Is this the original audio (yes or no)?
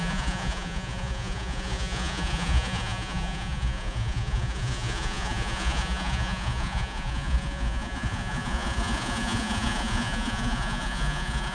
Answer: no